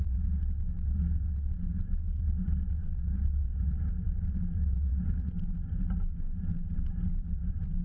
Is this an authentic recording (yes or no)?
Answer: no